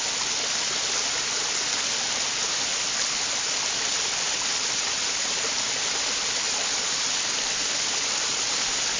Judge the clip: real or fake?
real